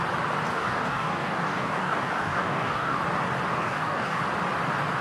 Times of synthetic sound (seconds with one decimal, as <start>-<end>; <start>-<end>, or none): 0.5-3.0; 3.5-4.2